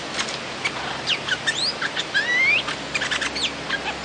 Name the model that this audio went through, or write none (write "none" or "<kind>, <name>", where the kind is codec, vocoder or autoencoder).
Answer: none